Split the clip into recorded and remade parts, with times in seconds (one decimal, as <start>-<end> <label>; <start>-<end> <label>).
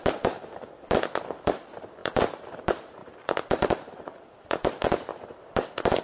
0.0-0.4 remade; 0.4-1.3 recorded; 1.3-6.0 remade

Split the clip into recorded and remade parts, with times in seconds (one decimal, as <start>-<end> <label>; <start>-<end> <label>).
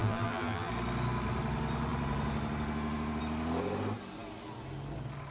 0.0-0.7 remade; 0.7-5.3 recorded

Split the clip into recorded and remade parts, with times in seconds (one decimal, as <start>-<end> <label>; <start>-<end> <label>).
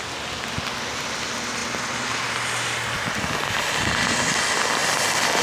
0.0-5.4 recorded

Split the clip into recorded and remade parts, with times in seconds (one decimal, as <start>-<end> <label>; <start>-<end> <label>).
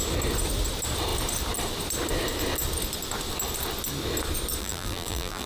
0.0-4.6 recorded; 4.6-5.5 remade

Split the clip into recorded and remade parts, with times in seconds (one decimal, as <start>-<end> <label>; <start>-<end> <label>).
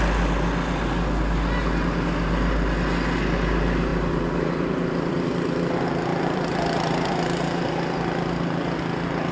0.0-3.9 recorded; 3.9-5.3 remade; 5.3-6.1 recorded; 6.1-7.7 remade; 7.7-9.3 recorded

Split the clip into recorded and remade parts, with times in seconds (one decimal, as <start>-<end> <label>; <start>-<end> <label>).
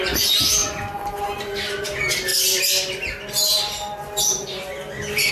0.0-2.3 recorded; 2.3-5.3 remade